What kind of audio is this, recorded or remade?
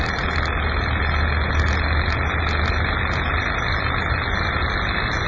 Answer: recorded